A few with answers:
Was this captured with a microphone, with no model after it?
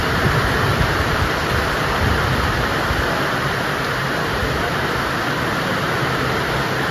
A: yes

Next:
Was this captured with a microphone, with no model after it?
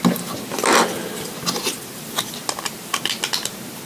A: yes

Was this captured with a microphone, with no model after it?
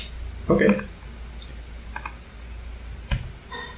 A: yes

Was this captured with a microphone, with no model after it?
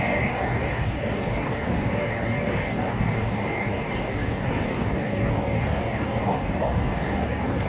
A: no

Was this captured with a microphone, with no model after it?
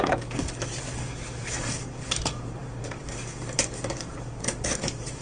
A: no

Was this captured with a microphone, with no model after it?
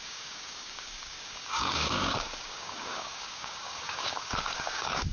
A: no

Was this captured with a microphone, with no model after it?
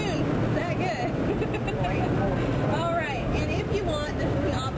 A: yes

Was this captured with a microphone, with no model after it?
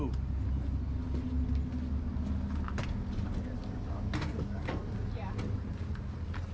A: yes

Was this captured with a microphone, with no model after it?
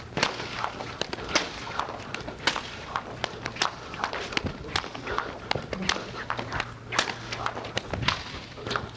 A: yes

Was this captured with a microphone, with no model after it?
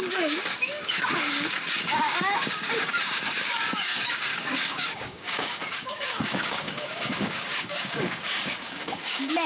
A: no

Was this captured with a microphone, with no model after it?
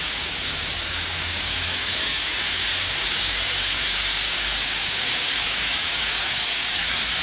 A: no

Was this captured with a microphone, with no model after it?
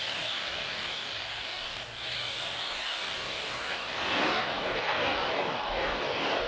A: no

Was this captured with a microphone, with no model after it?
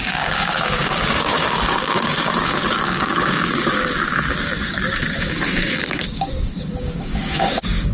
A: no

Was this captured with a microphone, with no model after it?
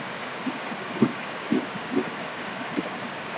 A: no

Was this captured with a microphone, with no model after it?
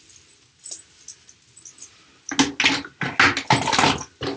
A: yes